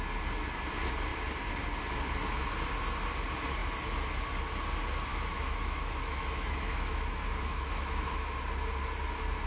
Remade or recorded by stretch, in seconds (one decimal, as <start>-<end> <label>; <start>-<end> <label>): 0.0-5.1 recorded; 5.1-8.4 remade; 8.4-9.5 recorded